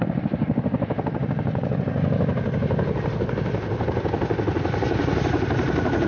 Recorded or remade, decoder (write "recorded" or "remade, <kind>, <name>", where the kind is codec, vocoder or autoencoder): recorded